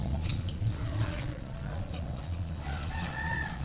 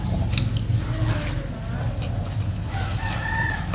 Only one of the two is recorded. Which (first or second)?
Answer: second